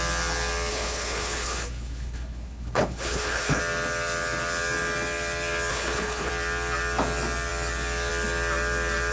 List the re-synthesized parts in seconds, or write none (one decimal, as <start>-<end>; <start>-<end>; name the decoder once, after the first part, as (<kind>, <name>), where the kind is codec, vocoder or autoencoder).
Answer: 0.7-3.6 (codec, HILCodec); 5.7-6.3